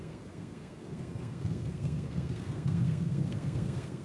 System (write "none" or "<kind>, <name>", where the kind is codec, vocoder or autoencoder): codec, SNAC